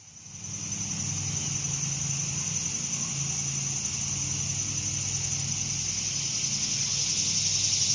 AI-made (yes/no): no